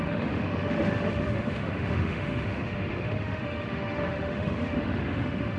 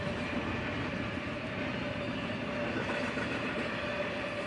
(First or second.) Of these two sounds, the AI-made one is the first